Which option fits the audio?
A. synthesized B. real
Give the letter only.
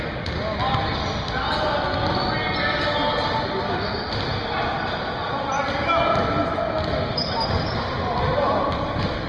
B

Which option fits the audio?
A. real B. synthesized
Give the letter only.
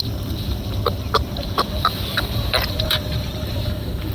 B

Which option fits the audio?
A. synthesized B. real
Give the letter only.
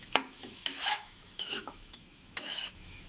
A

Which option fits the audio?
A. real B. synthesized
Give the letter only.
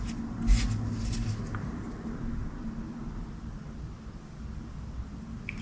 A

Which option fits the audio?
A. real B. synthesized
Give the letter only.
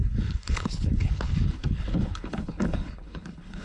B